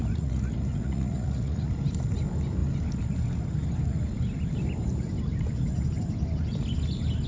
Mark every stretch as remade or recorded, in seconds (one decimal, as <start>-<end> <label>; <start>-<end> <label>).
0.0-1.7 remade; 1.7-7.3 recorded